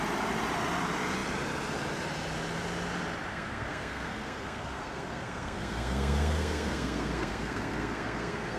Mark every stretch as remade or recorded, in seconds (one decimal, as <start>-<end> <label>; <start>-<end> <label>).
0.0-3.3 recorded; 3.3-8.6 remade